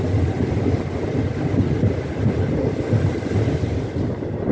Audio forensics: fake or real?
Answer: real